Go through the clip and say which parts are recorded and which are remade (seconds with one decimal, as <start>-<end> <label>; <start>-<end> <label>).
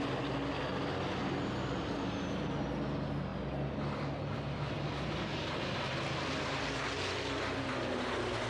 0.0-8.5 recorded